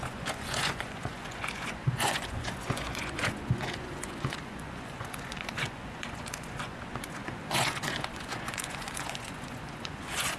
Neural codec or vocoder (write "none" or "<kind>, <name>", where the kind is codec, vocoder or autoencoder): vocoder, Vocos